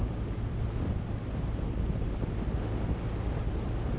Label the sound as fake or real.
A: real